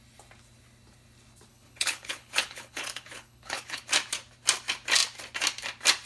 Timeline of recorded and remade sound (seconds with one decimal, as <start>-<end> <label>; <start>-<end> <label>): 0.0-1.5 recorded; 1.5-3.8 remade; 3.8-6.1 recorded